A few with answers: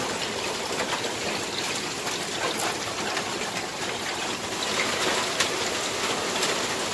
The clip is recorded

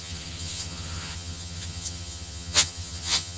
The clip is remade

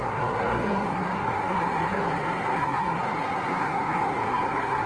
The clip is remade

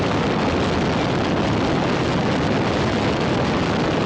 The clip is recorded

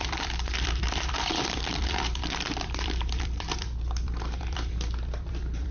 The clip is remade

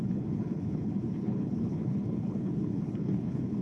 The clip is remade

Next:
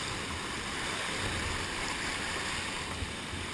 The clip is recorded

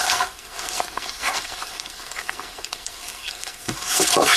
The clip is remade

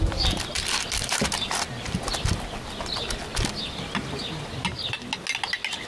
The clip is recorded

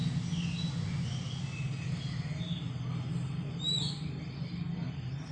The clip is recorded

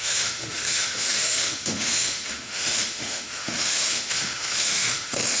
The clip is remade